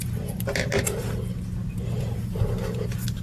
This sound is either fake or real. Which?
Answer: real